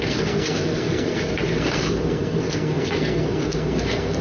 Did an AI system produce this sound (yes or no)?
yes